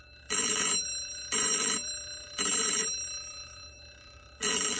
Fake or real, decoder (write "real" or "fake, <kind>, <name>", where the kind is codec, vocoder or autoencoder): fake, vocoder, BigVGAN v2